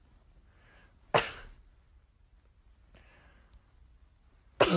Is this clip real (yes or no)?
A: yes